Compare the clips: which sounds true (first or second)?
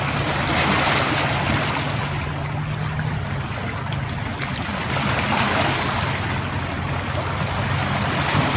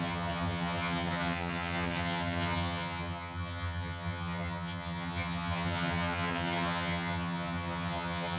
first